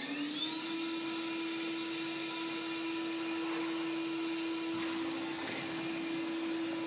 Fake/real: real